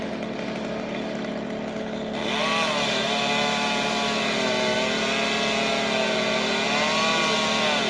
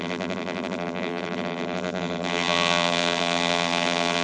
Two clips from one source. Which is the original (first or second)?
first